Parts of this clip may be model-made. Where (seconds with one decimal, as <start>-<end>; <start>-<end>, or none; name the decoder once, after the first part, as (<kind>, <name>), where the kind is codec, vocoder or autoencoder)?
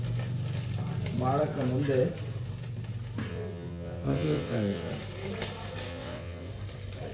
3.3-4.9 (vocoder, WaveNeXt); 5.9-6.5